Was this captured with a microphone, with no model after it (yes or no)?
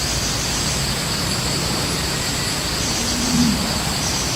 no